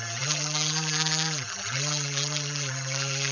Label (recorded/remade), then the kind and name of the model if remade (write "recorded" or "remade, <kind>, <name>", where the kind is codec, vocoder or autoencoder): remade, vocoder, BigVGAN v2